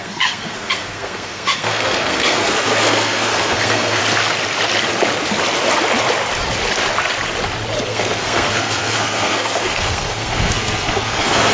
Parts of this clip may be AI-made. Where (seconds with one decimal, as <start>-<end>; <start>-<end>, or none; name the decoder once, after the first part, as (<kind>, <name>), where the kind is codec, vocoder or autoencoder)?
0.0-4.0 (codec, SNAC); 7.8-11.5